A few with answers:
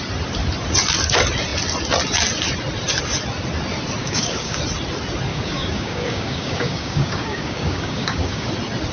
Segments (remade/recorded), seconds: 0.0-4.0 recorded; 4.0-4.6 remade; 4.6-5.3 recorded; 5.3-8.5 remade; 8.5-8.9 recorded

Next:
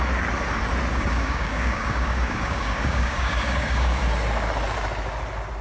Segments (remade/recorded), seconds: 0.0-0.9 recorded; 0.9-4.0 remade; 4.0-5.6 recorded

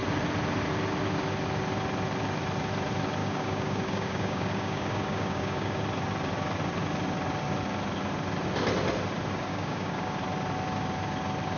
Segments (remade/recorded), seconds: 0.0-3.2 recorded; 3.2-5.8 remade; 5.8-9.5 recorded; 9.5-10.1 remade; 10.1-11.6 recorded

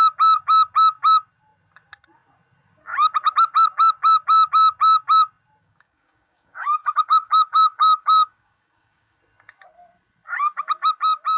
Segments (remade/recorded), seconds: 0.0-5.6 recorded; 5.6-9.2 remade; 9.2-11.4 recorded

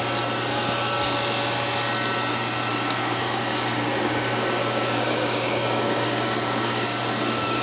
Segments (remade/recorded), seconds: 0.0-2.7 recorded; 2.7-7.6 remade

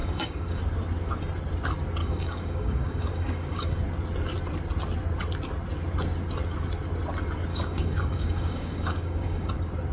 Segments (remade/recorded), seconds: 0.0-0.6 remade; 0.6-2.0 recorded; 2.0-3.8 remade; 3.8-7.5 recorded; 7.5-9.5 remade; 9.5-9.9 recorded